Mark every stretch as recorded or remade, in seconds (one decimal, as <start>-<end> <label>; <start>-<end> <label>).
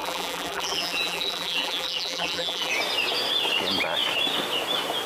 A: 0.0-2.7 remade; 2.7-5.1 recorded